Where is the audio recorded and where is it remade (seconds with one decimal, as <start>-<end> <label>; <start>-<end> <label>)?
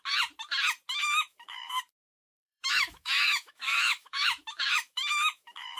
0.0-1.0 recorded; 1.0-1.8 remade; 1.8-2.3 recorded; 2.3-5.8 remade